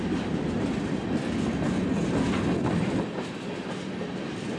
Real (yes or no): yes